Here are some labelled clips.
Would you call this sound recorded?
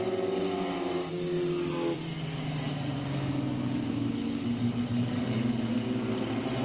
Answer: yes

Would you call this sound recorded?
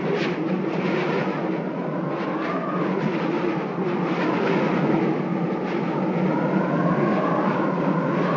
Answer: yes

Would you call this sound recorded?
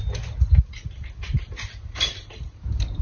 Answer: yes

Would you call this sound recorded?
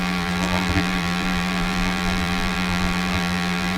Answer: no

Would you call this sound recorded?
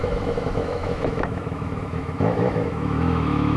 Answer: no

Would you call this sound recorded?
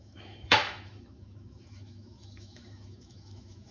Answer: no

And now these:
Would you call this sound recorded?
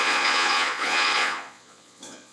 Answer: no